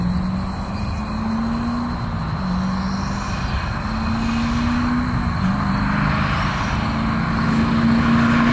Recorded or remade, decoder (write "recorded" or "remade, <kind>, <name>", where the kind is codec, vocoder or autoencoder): recorded